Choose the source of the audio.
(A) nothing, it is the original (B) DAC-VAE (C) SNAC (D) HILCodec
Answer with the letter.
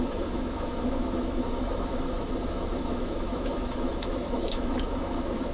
B